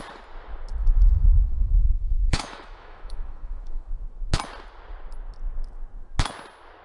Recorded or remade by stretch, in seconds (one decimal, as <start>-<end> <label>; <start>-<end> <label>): 0.0-0.8 recorded; 0.8-3.9 remade; 3.9-6.8 recorded